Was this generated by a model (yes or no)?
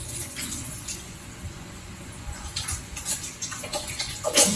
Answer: yes